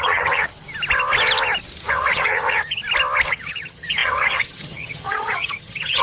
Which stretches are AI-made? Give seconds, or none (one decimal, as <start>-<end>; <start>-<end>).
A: 0.0-0.5; 1.9-2.8; 3.3-6.0